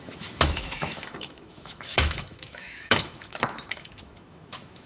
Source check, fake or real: fake